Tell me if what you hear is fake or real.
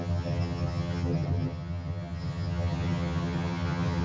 fake